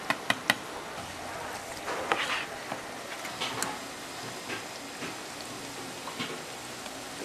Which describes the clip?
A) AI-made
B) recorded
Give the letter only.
B